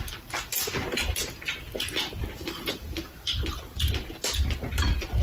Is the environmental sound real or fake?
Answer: real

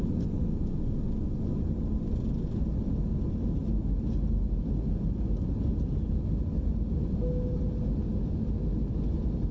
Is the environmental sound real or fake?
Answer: real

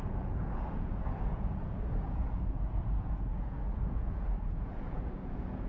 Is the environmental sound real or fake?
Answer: fake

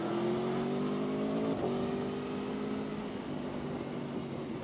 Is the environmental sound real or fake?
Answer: real